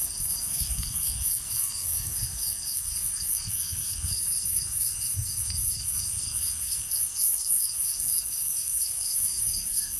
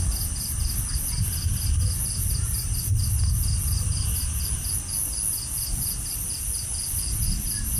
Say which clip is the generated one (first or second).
first